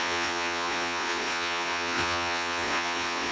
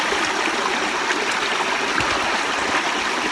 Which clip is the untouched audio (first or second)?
second